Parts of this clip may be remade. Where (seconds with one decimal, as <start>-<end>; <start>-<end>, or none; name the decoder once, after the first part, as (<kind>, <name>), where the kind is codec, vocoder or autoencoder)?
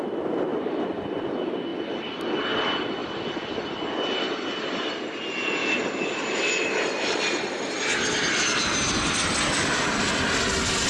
0.5-1.0 (vocoder, BigVGAN v2); 5.6-7.2